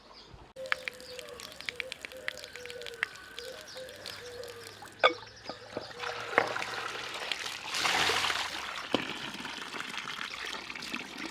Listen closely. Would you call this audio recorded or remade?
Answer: recorded